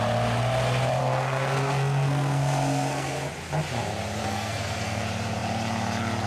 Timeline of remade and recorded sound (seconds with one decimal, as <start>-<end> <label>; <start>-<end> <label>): 0.0-1.0 recorded; 1.0-3.1 remade; 3.1-4.2 recorded; 4.2-5.0 remade; 5.0-6.3 recorded